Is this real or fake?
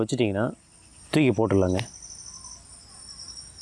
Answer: real